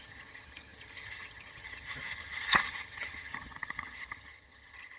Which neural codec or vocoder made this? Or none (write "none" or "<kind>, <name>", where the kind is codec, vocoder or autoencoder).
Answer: vocoder, HiFi-GAN